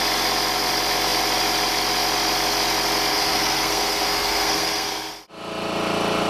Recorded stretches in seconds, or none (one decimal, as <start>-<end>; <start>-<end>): 0.0-3.1; 5.1-6.3